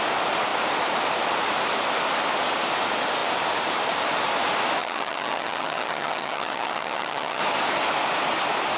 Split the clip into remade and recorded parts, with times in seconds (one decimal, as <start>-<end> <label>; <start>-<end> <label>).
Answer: 0.0-4.8 recorded; 4.8-7.4 remade; 7.4-8.8 recorded

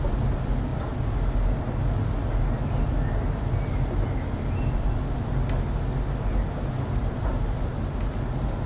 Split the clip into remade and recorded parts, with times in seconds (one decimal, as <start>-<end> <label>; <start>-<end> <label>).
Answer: 0.0-8.7 recorded

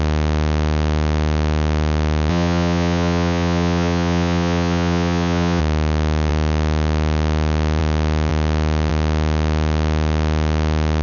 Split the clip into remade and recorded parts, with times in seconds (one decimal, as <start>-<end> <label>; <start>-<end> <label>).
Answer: 0.0-2.3 recorded; 2.3-5.6 remade; 5.6-11.0 recorded

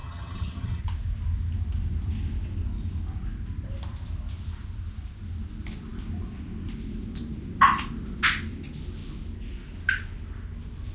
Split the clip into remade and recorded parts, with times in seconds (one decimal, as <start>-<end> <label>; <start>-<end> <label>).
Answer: 0.0-0.8 remade; 0.8-10.9 recorded